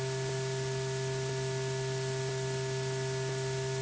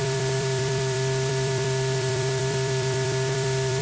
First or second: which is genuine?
first